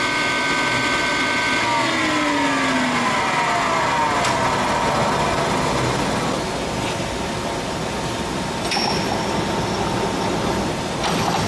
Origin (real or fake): real